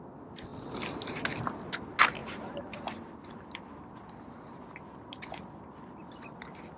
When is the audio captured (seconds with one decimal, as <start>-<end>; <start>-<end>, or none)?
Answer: 0.0-2.2; 3.9-6.8